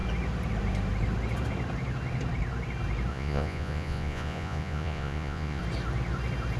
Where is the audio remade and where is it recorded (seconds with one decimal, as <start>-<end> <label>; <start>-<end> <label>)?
0.0-3.1 recorded; 3.1-5.6 remade; 5.6-6.6 recorded